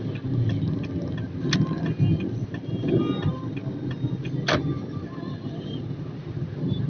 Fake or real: real